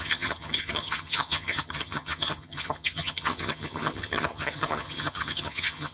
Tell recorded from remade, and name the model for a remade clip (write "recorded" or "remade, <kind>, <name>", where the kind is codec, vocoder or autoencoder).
remade, vocoder, HiFi-GAN